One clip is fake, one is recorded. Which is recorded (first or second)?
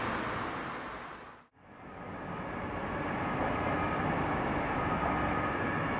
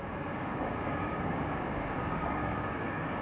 first